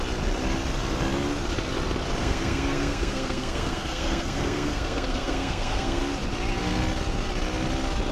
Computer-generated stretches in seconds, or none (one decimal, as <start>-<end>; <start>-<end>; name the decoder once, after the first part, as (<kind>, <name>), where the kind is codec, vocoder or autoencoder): 2.2-6.0 (codec, SNAC)